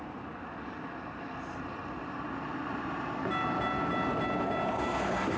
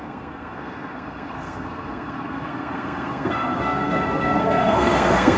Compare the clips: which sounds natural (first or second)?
first